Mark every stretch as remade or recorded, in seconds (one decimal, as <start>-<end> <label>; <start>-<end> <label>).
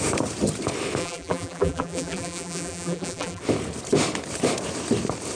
0.0-1.0 recorded; 1.0-3.4 remade; 3.4-5.3 recorded